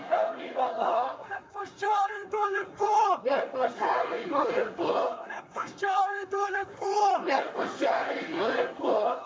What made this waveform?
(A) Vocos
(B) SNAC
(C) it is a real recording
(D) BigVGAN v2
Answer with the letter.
B